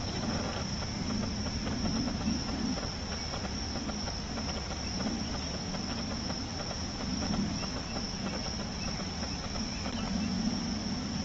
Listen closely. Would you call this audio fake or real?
real